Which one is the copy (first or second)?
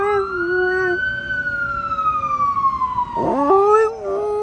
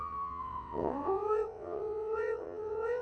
second